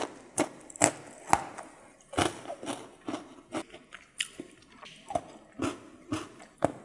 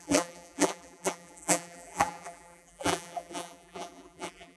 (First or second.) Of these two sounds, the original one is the first